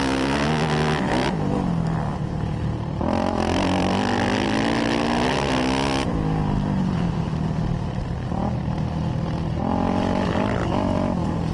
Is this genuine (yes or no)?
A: yes